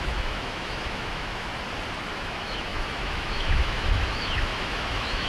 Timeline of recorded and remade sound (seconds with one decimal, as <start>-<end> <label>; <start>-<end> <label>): 0.0-1.5 remade; 1.5-2.1 recorded; 2.1-5.3 remade

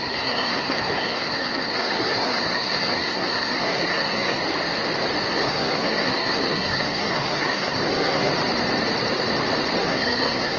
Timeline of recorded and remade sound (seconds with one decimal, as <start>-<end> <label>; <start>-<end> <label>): 0.0-4.4 remade; 4.4-5.3 recorded; 5.3-8.3 remade; 8.3-9.8 recorded; 9.8-10.6 remade

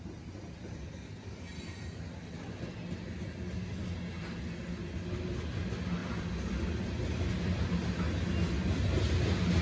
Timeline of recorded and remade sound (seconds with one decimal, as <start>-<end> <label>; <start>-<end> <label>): 0.0-9.6 recorded

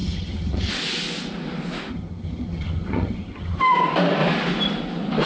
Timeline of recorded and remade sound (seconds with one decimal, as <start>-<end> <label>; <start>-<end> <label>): 0.0-0.7 remade; 0.7-1.9 recorded; 1.9-3.6 remade; 3.6-5.3 recorded

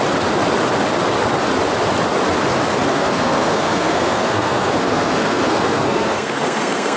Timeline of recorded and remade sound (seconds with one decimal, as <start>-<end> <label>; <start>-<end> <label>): 0.0-2.9 recorded; 2.9-7.0 remade

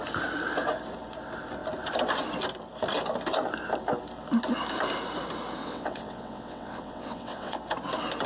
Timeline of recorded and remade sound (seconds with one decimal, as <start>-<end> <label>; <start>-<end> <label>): 0.0-5.6 recorded; 5.6-7.6 remade; 7.6-8.3 recorded

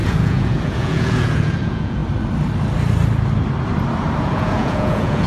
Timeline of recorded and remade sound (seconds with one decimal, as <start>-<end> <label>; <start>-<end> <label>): 0.0-2.0 remade; 2.0-4.2 recorded; 4.2-5.3 remade